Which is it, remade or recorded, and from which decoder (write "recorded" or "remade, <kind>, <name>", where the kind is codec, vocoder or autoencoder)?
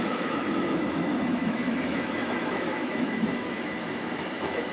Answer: remade, autoencoder, DAC-VAE